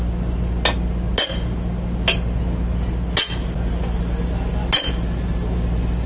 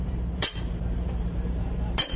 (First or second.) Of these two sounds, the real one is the first